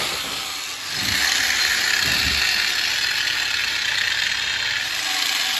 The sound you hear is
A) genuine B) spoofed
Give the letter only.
A